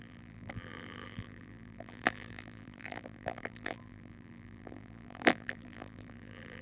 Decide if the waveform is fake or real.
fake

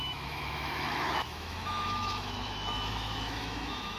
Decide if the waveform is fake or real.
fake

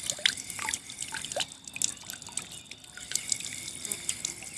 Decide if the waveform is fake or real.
real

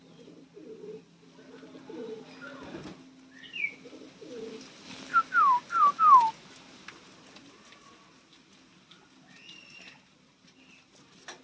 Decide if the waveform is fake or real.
real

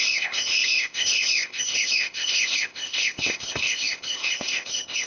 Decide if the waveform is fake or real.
fake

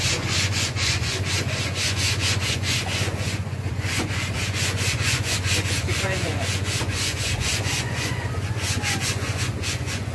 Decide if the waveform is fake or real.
fake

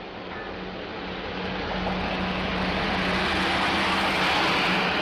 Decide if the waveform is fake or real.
real